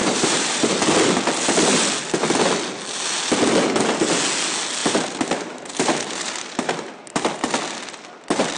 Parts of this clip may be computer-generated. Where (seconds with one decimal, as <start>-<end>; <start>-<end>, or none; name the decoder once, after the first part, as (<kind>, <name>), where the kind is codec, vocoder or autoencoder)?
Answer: 0.0-0.7 (vocoder, BigVGAN v2); 4.8-6.9